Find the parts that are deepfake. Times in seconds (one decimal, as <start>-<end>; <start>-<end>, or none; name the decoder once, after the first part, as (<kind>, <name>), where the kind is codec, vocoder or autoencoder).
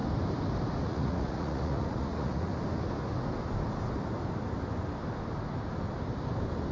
0.8-2.5 (vocoder, Vocos)